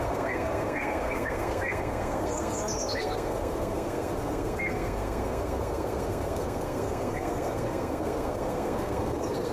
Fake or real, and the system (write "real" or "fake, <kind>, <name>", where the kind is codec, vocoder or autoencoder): fake, codec, SNAC